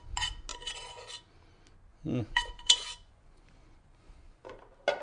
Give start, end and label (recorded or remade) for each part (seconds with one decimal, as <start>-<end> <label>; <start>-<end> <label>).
0.0-0.5 recorded; 0.5-1.0 remade; 1.0-1.9 recorded; 1.9-4.6 remade; 4.6-5.0 recorded